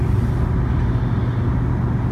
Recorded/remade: recorded